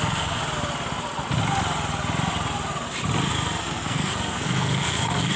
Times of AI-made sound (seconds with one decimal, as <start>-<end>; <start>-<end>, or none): 0.0-0.4; 3.6-5.4